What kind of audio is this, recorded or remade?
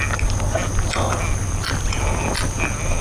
recorded